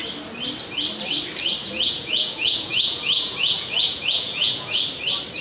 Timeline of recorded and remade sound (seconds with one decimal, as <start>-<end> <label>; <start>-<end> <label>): 0.0-1.6 recorded; 1.6-4.8 remade; 4.8-5.4 recorded

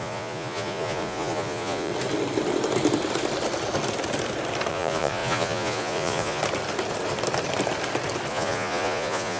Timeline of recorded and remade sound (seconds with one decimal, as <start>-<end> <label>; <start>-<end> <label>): 0.0-1.9 remade; 1.9-4.7 recorded; 4.7-6.4 remade; 6.4-8.3 recorded; 8.3-9.4 remade

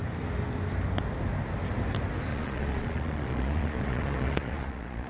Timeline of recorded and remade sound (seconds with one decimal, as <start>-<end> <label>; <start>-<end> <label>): 0.0-2.3 recorded; 2.3-5.1 remade

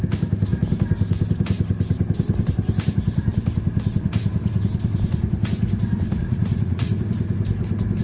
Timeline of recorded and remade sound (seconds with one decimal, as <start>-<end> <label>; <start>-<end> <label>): 0.0-6.2 recorded; 6.2-6.9 remade; 6.9-8.0 recorded

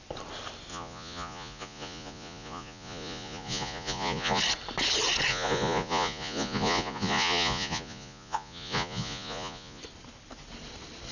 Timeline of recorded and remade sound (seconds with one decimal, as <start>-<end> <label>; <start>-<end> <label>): 0.0-0.7 recorded; 0.7-4.4 remade; 4.4-5.3 recorded; 5.3-9.8 remade; 9.8-11.1 recorded

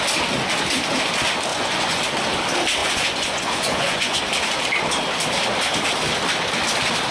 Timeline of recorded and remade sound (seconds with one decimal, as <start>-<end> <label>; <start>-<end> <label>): 0.0-1.5 recorded; 1.5-2.0 remade; 2.0-2.8 recorded; 2.8-4.2 remade; 4.2-7.1 recorded